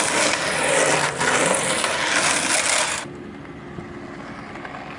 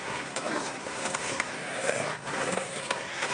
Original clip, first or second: first